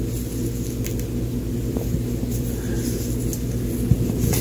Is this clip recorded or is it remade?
recorded